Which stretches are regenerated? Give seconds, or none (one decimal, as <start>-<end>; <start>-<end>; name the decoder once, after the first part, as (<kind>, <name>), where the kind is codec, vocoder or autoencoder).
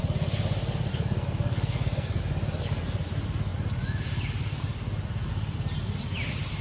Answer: 0.9-2.2 (codec, SNAC)